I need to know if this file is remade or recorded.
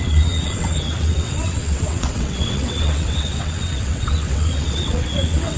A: remade